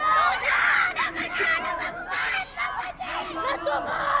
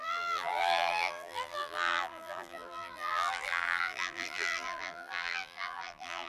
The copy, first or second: second